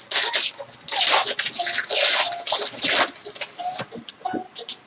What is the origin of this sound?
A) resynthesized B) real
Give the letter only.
B